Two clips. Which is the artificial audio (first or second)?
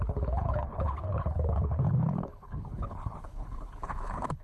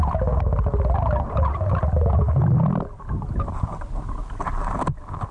first